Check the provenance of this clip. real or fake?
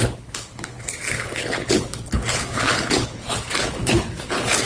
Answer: fake